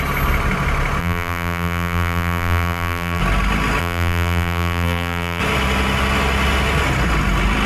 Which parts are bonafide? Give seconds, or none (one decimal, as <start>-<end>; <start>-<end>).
0.0-1.0; 3.2-3.8; 5.4-7.7